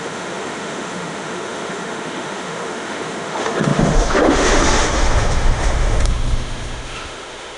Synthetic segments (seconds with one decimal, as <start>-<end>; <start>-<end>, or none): 0.0-7.6